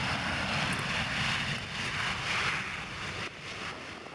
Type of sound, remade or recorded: recorded